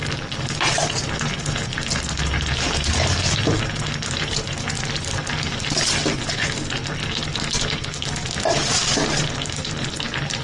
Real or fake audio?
real